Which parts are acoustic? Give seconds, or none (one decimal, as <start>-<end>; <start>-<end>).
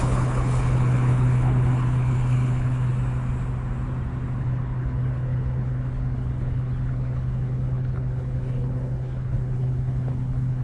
2.9-4.4